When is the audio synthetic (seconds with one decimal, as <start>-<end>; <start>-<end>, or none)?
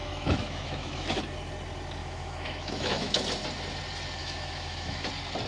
0.0-1.2; 2.0-3.2; 4.2-5.1